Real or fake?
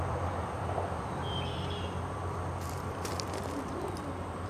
fake